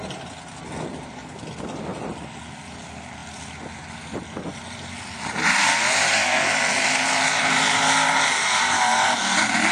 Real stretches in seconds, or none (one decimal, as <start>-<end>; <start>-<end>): 0.0-9.7